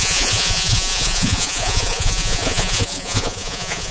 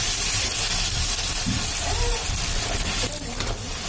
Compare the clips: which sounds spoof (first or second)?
first